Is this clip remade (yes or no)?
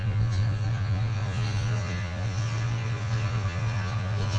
yes